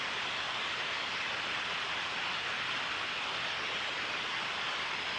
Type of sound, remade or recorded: recorded